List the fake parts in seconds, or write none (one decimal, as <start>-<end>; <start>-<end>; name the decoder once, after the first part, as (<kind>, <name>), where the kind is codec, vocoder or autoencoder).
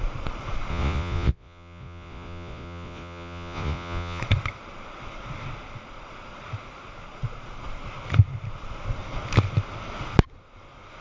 0.7-4.2 (vocoder, Vocos)